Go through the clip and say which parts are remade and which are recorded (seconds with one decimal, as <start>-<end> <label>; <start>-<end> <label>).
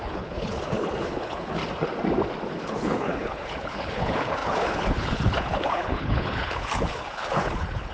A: 0.0-1.6 remade; 1.6-2.5 recorded; 2.5-7.9 remade